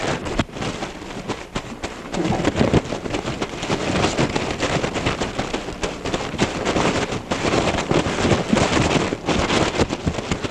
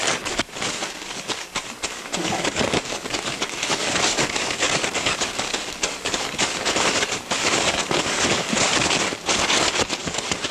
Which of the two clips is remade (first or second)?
second